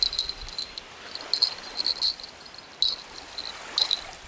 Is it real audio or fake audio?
real